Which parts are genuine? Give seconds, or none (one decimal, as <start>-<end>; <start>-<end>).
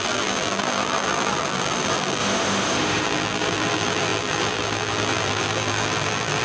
2.2-3.0